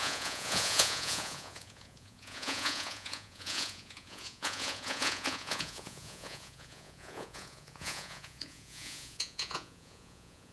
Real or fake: fake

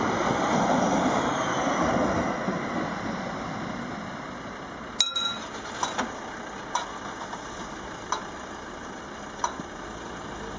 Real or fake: real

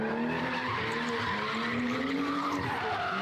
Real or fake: real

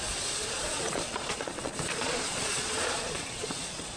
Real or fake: fake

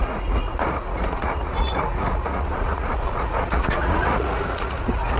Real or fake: fake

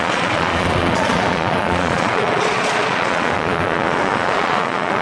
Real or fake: fake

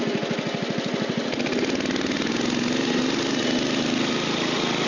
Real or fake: real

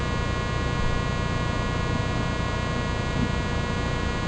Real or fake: real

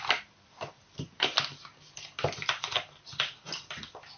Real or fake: real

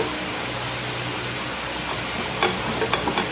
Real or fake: real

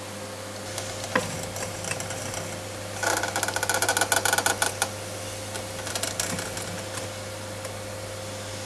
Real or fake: real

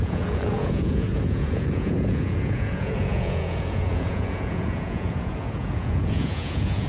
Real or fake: fake